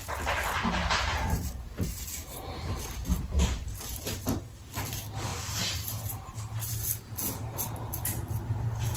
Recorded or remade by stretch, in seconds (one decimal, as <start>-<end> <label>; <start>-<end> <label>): 0.0-2.3 recorded; 2.3-2.8 remade; 2.8-5.3 recorded; 5.3-6.7 remade; 6.7-9.0 recorded